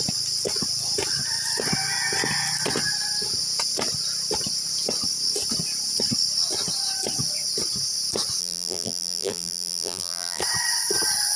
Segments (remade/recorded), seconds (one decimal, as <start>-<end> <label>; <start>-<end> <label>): 0.0-8.4 recorded; 8.4-10.4 remade; 10.4-11.4 recorded